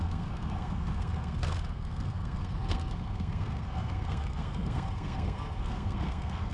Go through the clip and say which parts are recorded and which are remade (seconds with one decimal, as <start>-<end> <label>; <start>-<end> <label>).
0.0-6.5 remade